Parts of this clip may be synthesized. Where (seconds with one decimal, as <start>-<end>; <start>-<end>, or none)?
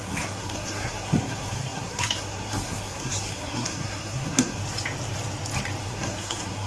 0.0-4.6; 5.8-6.7